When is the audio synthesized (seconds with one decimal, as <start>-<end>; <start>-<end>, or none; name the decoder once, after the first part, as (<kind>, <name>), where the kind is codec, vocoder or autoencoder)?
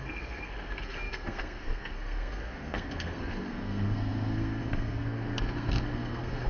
0.0-6.5 (codec, SNAC)